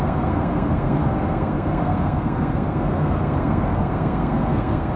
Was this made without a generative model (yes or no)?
no